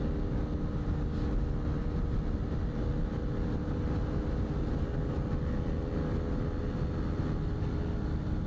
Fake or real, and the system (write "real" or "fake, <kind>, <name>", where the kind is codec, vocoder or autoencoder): real